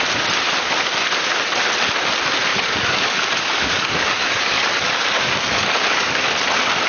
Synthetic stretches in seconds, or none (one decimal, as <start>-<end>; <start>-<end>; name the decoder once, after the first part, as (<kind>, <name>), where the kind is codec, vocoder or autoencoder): 2.5-6.2 (codec, DAC)